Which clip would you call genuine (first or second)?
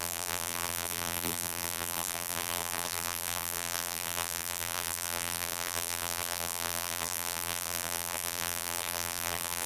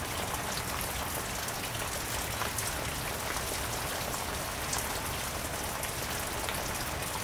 second